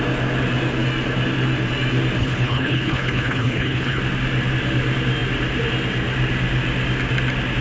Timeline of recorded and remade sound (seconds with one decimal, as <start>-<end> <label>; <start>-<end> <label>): 0.0-2.2 recorded; 2.2-4.0 remade; 4.0-7.6 recorded